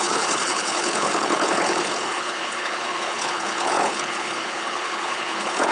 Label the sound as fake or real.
fake